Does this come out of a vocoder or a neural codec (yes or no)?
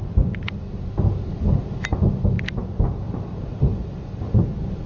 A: no